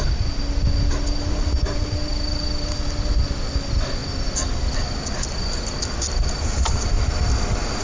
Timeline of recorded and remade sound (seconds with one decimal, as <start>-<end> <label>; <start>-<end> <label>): 0.0-7.8 recorded